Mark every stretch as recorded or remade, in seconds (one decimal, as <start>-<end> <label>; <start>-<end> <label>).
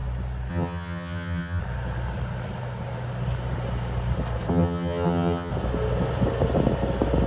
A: 0.0-0.5 recorded; 0.5-1.6 remade; 1.6-4.5 recorded; 4.5-5.5 remade; 5.5-7.3 recorded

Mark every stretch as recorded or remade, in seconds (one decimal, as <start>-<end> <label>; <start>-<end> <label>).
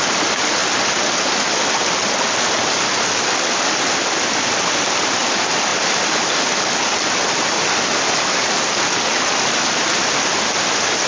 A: 0.0-11.1 recorded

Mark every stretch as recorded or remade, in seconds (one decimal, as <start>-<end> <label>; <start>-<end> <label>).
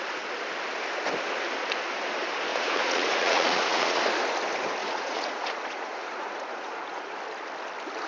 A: 0.0-2.5 recorded; 2.5-4.0 remade; 4.0-4.8 recorded; 4.8-7.2 remade; 7.2-8.1 recorded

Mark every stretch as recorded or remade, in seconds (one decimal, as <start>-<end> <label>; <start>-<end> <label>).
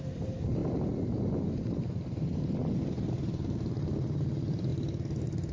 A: 0.0-5.5 recorded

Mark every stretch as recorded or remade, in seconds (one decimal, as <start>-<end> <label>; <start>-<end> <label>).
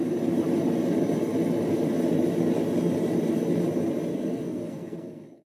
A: 0.0-4.1 recorded; 4.1-5.6 remade